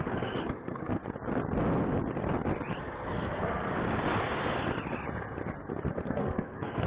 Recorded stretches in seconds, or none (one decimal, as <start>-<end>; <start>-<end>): 1.0-2.8; 3.7-5.9